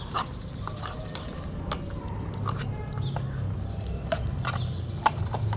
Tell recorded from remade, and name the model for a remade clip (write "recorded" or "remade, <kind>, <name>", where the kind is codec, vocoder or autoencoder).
recorded